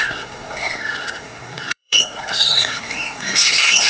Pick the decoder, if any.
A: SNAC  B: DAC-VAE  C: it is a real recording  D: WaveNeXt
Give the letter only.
A